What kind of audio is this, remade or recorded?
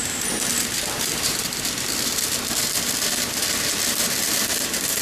remade